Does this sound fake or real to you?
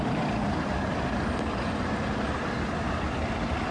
real